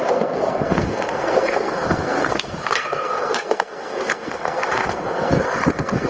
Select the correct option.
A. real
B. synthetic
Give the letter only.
B